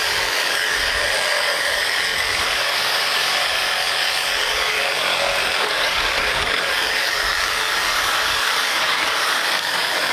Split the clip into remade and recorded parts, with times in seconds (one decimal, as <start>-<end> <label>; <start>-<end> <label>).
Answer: 0.0-10.1 remade